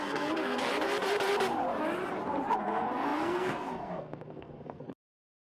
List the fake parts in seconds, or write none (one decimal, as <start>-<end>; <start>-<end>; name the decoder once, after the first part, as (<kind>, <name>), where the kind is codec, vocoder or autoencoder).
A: 0.0-0.7 (codec, SNAC); 2.6-5.5